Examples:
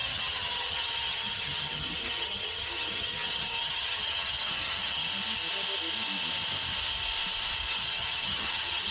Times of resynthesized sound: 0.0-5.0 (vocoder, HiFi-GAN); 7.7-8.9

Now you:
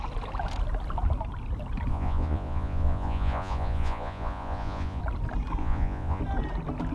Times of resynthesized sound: 1.9-5.0 (vocoder, Vocos); 5.6-6.2

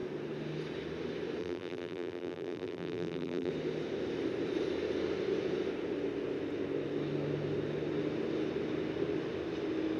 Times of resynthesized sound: 1.4-3.5 (vocoder, BigVGAN v2)

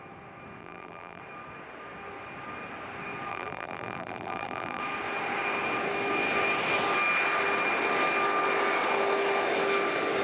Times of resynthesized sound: 0.6-1.2 (vocoder, BigVGAN v2); 3.3-4.8

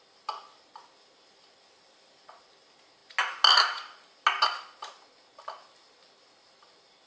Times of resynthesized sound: none

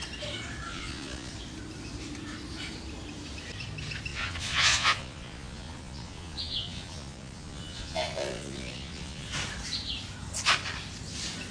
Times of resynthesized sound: 0.7-1.3 (vocoder, Vocos); 4.1-9.3